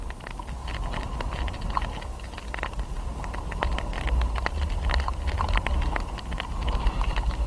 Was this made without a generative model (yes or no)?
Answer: yes